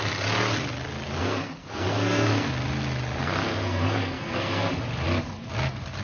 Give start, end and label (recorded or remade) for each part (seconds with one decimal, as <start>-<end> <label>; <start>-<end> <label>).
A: 0.0-1.2 recorded; 1.2-2.5 remade; 2.5-3.2 recorded; 3.2-4.7 remade; 4.7-6.0 recorded